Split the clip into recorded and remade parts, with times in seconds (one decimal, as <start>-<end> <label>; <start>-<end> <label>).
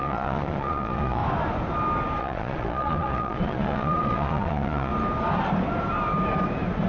0.0-1.2 remade; 1.2-2.2 recorded; 2.2-4.9 remade; 4.9-6.9 recorded